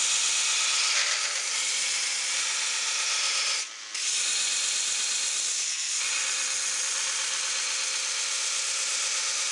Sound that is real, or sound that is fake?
real